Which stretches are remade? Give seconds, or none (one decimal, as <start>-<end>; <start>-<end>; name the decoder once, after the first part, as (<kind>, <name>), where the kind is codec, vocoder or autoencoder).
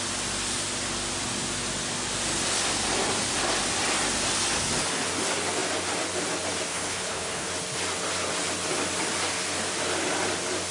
6.7-7.5 (codec, HILCodec)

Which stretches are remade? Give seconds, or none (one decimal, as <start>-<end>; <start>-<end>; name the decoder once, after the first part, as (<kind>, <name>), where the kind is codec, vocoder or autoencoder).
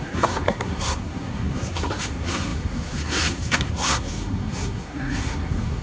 0.0-5.8 (codec, SNAC)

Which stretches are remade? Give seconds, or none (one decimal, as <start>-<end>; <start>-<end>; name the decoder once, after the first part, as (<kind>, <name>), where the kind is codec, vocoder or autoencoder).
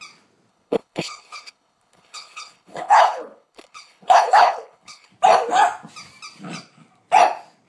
0.5-5.1 (codec, HILCodec)